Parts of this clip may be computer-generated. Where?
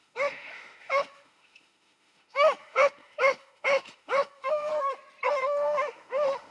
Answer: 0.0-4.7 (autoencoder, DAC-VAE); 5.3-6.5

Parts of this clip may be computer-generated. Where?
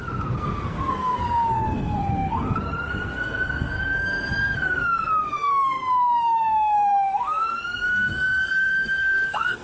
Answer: 0.0-9.6 (codec, SNAC)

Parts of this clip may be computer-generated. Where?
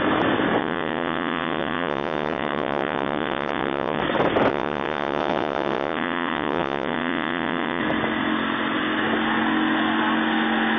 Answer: 0.6-4.0 (vocoder, WaveNeXt); 4.5-7.8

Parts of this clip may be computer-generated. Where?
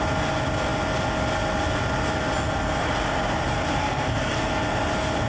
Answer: 3.8-4.5 (codec, SNAC)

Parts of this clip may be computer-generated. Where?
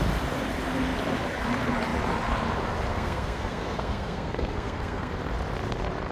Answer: 2.9-5.1 (codec, SNAC)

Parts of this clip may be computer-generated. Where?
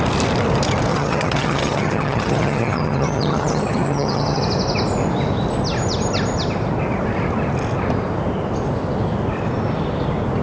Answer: 0.9-4.4 (vocoder, HiFi-GAN)